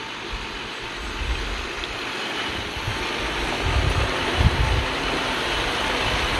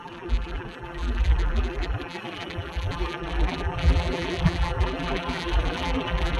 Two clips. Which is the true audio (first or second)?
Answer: first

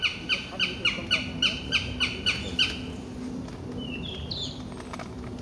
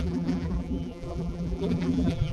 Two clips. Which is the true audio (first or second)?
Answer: first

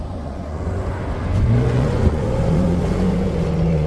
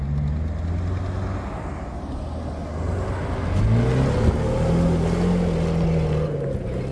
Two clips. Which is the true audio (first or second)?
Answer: second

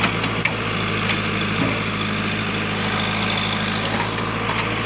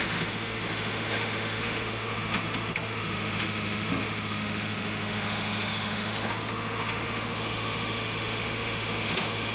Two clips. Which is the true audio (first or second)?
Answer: first